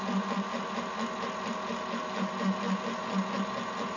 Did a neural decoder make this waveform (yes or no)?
no